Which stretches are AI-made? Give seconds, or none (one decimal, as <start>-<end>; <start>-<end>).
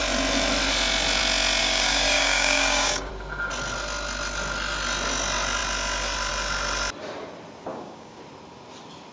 1.6-3.1; 7.7-8.2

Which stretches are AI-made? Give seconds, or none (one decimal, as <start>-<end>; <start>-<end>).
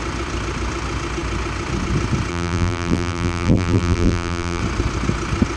2.3-4.6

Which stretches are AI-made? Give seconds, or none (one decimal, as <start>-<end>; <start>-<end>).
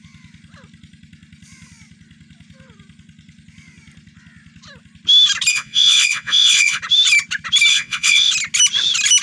5.5-6.8; 7.7-8.3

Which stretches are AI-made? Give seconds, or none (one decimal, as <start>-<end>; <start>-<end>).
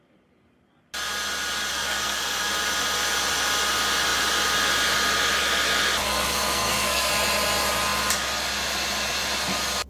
1.7-2.5; 6.0-7.1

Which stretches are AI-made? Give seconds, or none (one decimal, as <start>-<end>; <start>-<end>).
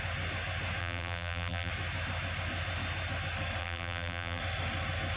0.8-1.7; 3.6-4.4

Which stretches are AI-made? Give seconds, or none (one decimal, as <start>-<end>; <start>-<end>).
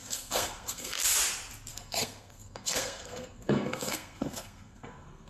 0.0-1.0; 1.7-5.3